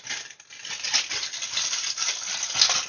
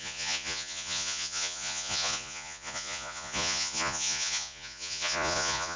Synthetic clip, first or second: second